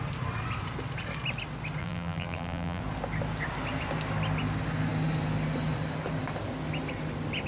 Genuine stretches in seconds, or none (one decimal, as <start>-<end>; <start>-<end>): 0.0-1.8; 2.8-7.5